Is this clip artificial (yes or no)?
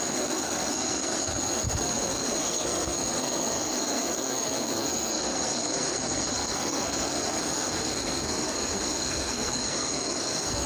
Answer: yes